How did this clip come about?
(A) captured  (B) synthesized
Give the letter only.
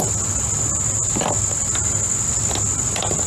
A